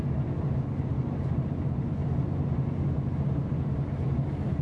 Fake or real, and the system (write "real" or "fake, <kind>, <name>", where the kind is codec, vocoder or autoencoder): real